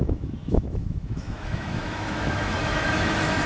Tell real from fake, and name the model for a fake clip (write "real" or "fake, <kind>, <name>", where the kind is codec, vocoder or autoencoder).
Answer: fake, autoencoder, DAC-VAE